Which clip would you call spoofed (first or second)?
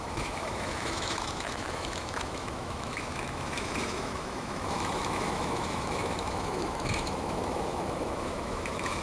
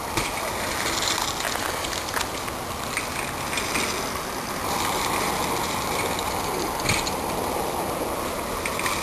first